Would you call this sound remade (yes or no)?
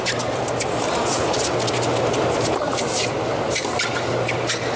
no